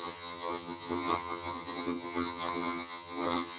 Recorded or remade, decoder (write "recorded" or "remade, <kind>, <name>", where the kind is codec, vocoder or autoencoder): remade, vocoder, HiFi-GAN